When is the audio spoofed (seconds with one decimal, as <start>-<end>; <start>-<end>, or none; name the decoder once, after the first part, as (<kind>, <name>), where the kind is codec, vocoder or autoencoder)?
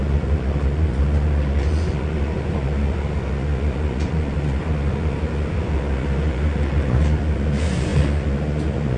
0.0-9.0 (vocoder, Vocos)